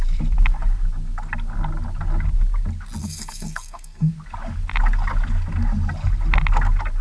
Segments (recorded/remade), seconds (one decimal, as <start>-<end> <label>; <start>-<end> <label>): 0.0-3.0 recorded; 3.0-4.1 remade; 4.1-7.0 recorded